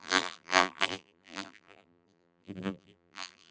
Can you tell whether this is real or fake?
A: fake